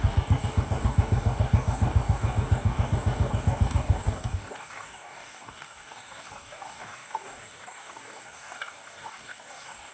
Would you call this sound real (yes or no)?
no